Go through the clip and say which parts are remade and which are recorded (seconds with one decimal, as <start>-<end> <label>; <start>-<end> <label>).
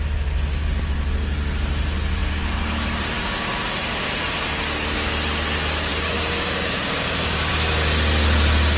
0.0-5.9 recorded; 5.9-7.5 remade; 7.5-8.8 recorded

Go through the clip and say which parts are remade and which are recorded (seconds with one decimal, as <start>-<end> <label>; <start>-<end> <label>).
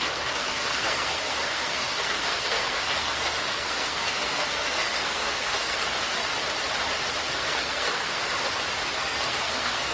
0.0-6.2 remade; 6.2-7.3 recorded; 7.3-8.2 remade; 8.2-9.0 recorded; 9.0-9.9 remade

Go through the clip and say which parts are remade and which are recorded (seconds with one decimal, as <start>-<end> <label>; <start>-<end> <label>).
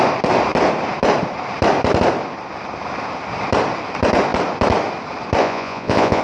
0.0-5.4 recorded; 5.4-6.2 remade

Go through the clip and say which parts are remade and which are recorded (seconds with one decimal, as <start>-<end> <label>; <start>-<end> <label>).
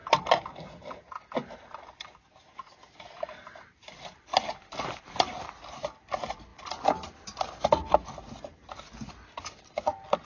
0.0-10.3 recorded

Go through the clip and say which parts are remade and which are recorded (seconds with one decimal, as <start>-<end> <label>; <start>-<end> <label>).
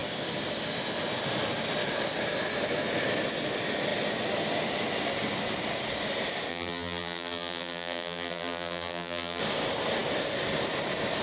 0.0-6.5 recorded; 6.5-9.4 remade; 9.4-11.2 recorded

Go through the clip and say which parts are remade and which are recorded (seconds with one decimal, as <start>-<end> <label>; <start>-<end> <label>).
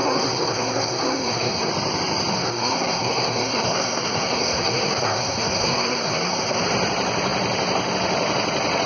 0.0-1.7 remade; 1.7-2.3 recorded; 2.3-6.6 remade; 6.6-8.9 recorded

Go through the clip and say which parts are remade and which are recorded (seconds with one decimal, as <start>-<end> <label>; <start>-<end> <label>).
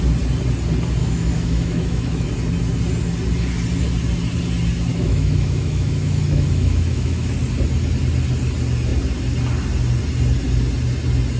0.0-1.0 recorded; 1.0-2.3 remade; 2.3-4.9 recorded; 4.9-7.3 remade; 7.3-11.4 recorded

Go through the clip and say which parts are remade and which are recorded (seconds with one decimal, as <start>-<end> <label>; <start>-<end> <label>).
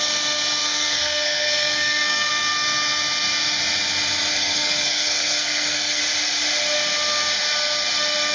0.0-0.6 recorded; 0.6-2.3 remade; 2.3-4.3 recorded; 4.3-6.0 remade; 6.0-8.3 recorded